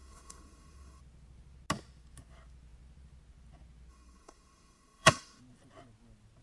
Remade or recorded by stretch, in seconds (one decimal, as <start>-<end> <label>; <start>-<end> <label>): 0.0-1.0 remade; 1.0-3.9 recorded; 3.9-5.4 remade; 5.4-6.4 recorded